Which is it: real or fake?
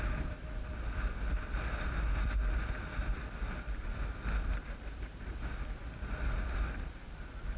real